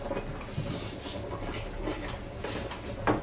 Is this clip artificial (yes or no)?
no